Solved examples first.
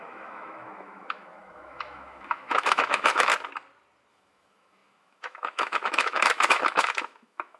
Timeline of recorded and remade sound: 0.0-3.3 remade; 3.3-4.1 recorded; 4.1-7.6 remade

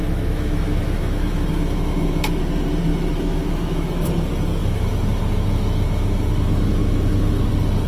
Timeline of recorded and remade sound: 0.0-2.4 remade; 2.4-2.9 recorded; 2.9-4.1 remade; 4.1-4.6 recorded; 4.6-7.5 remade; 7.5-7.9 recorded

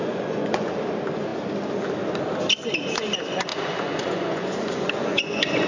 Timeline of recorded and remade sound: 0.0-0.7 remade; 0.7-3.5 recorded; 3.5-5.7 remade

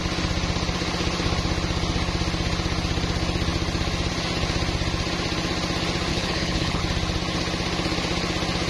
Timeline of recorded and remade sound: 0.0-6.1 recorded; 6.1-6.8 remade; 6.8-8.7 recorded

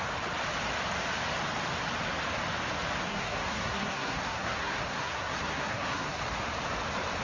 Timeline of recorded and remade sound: 0.0-3.1 recorded; 3.1-6.2 remade; 6.2-7.2 recorded